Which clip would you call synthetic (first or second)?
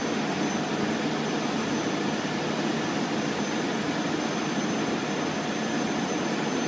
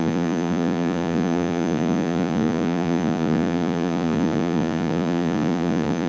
second